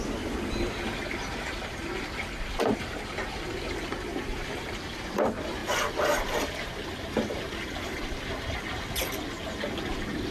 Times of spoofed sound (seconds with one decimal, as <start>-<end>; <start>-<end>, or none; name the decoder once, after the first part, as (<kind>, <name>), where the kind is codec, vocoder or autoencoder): 4.1-4.7 (vocoder, BigVGAN v2); 5.6-8.0